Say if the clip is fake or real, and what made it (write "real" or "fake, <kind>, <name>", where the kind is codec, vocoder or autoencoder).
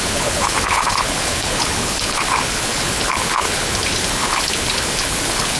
fake, codec, HILCodec